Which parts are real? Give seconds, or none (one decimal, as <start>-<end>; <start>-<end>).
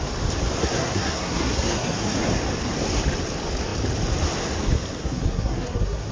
0.0-0.6; 2.2-5.0